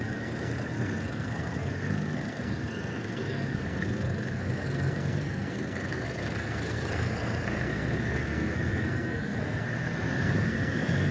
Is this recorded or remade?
remade